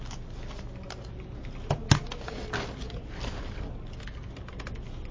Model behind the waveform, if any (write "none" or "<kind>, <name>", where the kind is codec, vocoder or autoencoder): none